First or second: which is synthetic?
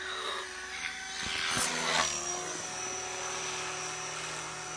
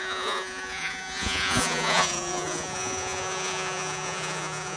second